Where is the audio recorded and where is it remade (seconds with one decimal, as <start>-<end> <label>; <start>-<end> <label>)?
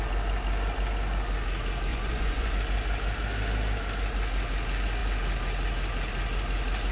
0.0-1.9 recorded; 1.9-2.5 remade; 2.5-6.9 recorded